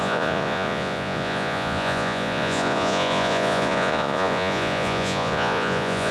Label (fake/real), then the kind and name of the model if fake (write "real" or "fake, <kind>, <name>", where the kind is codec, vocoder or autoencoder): fake, vocoder, Vocos